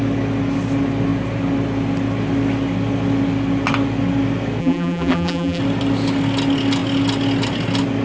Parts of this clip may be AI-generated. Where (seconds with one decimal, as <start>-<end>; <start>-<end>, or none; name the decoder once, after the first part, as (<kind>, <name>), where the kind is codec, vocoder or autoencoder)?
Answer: 4.6-5.6 (vocoder, BigVGAN v2)